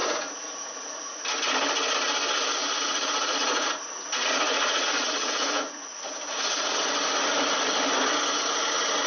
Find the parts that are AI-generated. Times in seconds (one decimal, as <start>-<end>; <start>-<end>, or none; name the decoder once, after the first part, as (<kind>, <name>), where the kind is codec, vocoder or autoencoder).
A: 0.0-1.2 (vocoder, Vocos); 2.6-6.7